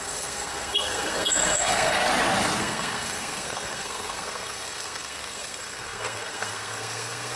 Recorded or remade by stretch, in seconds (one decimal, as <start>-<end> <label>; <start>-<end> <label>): 0.0-2.0 remade; 2.0-2.6 recorded; 2.6-7.4 remade